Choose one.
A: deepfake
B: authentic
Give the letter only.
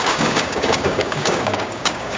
A